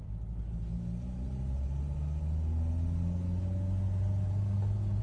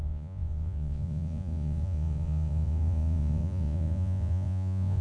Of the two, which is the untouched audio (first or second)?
first